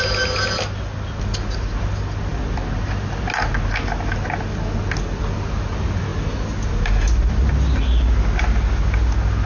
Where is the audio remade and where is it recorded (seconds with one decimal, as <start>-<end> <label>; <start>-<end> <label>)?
0.0-9.5 recorded